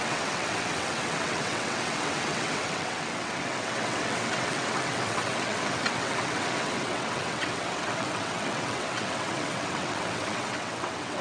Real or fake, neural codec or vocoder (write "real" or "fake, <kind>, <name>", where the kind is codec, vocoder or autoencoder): fake, vocoder, WaveNeXt